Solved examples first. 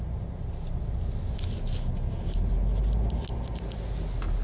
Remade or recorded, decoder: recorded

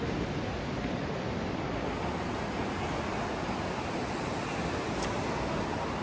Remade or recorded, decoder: recorded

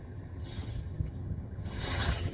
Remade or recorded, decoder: remade, vocoder, HiFi-GAN